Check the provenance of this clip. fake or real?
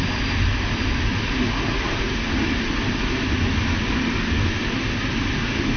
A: real